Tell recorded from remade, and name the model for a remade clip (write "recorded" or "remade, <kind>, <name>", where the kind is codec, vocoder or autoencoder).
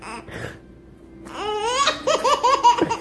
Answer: recorded